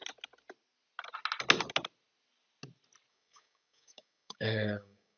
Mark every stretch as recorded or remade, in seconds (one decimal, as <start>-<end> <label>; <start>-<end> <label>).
0.0-3.1 recorded; 3.1-5.2 remade